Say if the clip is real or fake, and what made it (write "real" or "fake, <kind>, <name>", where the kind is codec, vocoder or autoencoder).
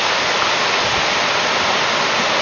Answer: real